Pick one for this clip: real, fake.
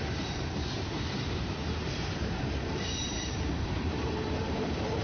fake